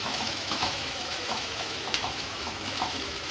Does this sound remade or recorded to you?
remade